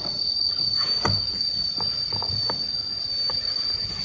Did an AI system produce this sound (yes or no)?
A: yes